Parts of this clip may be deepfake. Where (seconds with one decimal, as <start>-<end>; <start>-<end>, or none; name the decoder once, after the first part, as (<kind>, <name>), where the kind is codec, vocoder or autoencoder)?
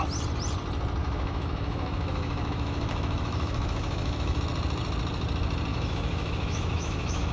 1.0-4.4 (autoencoder, DAC-VAE); 5.7-7.3